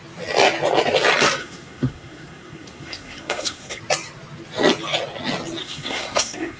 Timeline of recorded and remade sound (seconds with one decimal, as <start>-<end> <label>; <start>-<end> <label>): 0.0-1.4 recorded; 1.4-3.8 remade; 3.8-5.6 recorded; 5.6-6.6 remade